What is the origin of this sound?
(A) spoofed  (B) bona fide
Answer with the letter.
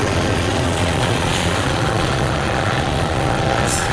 A